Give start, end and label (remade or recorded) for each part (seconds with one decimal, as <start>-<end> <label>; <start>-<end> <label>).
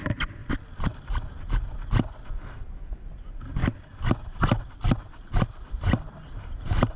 0.0-7.0 recorded